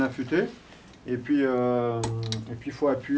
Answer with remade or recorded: recorded